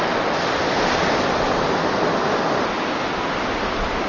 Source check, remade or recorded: recorded